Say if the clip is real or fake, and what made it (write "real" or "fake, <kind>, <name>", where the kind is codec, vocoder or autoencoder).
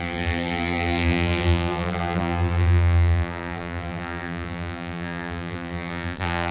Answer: fake, vocoder, BigVGAN v2